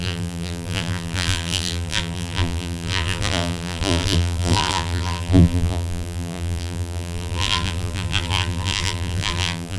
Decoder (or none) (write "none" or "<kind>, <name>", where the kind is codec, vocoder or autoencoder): vocoder, BigVGAN v2